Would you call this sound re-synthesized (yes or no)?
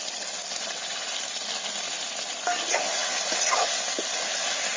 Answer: no